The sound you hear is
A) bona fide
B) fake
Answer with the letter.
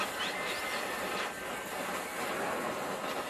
A